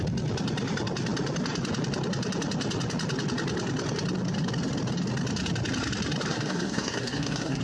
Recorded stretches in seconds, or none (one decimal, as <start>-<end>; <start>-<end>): 0.0-6.3